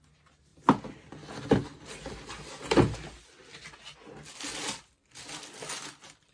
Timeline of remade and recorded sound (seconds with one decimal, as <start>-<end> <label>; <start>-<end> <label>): 0.0-6.3 recorded